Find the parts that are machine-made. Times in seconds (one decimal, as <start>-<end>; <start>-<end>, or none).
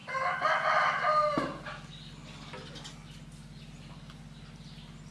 none